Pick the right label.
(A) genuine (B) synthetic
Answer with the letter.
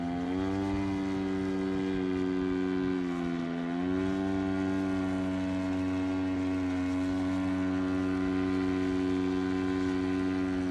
A